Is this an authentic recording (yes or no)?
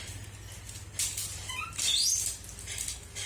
yes